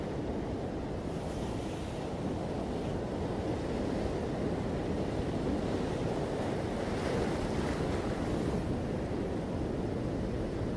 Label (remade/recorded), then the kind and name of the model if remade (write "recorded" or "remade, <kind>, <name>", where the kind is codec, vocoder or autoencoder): recorded